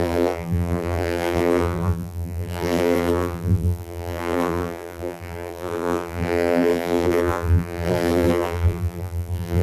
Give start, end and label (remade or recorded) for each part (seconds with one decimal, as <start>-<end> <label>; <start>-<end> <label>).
0.0-9.6 remade